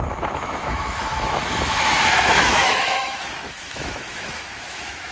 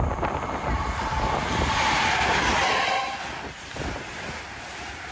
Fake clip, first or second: first